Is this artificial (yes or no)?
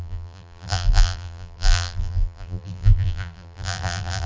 yes